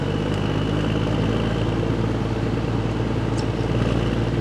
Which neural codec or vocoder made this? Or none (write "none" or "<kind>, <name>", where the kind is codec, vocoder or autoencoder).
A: none